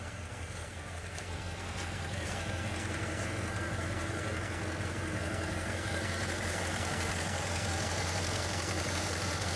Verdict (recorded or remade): remade